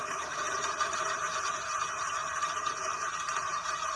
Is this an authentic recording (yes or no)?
yes